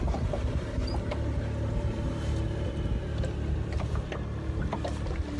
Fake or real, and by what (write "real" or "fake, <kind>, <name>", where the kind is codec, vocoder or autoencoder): real